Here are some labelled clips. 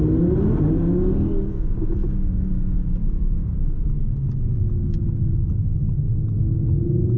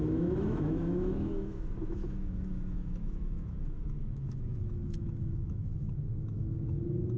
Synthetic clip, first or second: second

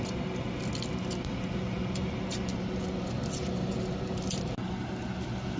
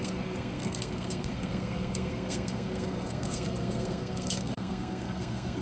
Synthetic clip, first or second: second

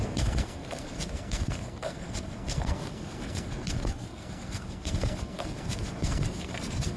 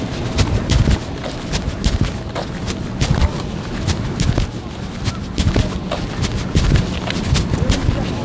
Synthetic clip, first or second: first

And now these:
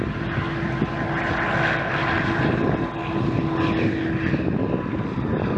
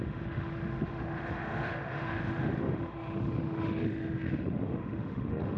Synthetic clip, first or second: second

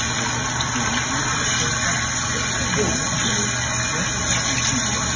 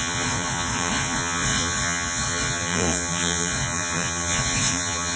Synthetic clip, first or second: second